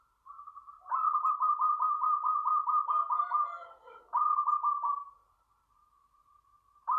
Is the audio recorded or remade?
remade